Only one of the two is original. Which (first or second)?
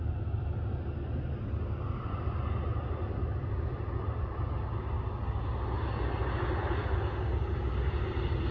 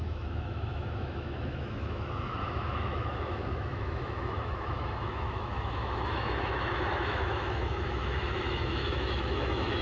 first